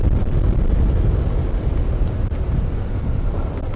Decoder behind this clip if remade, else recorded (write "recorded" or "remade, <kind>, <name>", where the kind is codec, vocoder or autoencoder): recorded